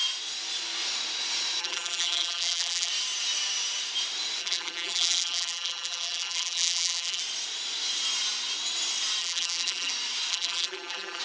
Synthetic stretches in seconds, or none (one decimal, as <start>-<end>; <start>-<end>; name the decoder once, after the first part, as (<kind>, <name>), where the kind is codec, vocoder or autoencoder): 1.6-2.9 (vocoder, BigVGAN v2); 4.4-7.2; 9.2-9.9; 10.3-11.2